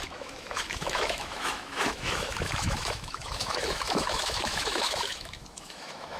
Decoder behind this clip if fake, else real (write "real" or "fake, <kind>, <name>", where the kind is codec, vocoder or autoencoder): fake, autoencoder, DAC-VAE